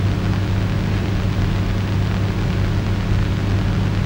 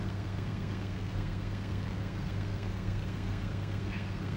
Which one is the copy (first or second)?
second